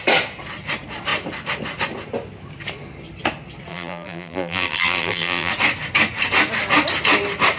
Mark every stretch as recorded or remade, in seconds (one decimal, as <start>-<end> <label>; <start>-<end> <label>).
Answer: 0.0-3.7 recorded; 3.7-5.5 remade; 5.5-7.6 recorded